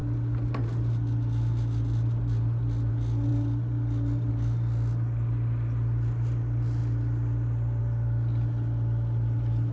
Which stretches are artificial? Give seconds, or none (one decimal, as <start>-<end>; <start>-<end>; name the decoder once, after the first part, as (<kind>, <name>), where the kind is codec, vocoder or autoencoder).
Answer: 6.8-7.8 (vocoder, BigVGAN v2)